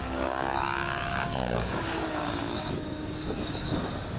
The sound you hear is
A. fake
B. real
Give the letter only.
A